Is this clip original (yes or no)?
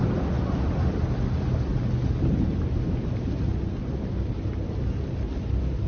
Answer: yes